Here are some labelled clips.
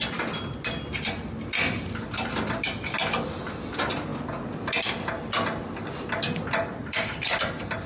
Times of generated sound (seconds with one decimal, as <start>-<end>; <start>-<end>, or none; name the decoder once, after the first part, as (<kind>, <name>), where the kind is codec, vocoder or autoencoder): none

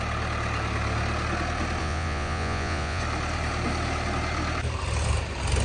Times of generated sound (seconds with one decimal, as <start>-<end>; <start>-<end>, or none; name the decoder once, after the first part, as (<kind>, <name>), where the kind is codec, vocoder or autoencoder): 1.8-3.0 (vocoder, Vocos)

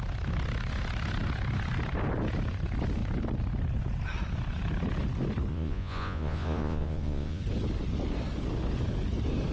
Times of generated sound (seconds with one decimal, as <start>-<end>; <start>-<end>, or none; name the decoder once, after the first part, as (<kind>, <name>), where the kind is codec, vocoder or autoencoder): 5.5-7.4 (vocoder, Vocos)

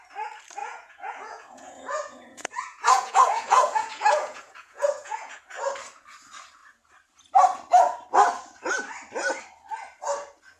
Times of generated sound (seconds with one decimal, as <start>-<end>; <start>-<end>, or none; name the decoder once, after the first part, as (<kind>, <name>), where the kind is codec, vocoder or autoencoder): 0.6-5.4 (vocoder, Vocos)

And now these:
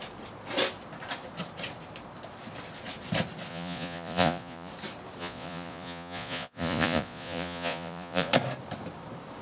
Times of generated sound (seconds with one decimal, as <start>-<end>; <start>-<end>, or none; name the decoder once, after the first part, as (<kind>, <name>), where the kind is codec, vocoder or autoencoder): 3.5-4.7 (vocoder, Vocos); 5.2-8.3

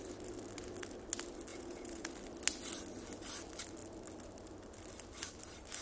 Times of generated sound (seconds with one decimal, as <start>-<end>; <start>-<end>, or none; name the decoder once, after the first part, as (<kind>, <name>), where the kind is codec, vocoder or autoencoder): 1.5-2.1 (vocoder, Vocos)